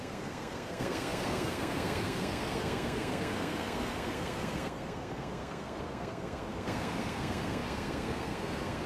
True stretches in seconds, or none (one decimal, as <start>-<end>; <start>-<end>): none